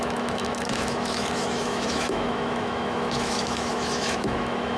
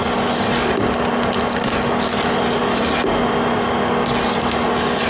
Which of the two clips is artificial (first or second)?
first